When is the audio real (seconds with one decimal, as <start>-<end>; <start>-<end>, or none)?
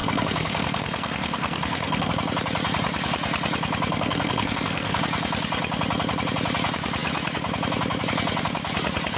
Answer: 2.1-3.9; 5.0-9.2